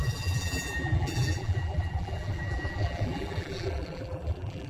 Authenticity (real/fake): fake